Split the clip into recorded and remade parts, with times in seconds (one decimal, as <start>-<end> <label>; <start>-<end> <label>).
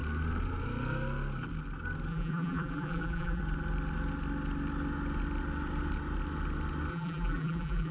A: 0.0-2.1 recorded; 2.1-3.4 remade; 3.4-6.9 recorded; 6.9-7.9 remade